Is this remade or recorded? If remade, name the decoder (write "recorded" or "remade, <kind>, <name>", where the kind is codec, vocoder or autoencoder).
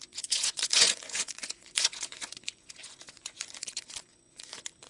remade, vocoder, Vocos